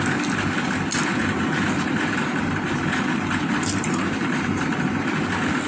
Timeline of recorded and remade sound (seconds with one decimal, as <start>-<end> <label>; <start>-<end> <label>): 0.0-1.2 recorded; 1.2-4.6 remade; 4.6-5.7 recorded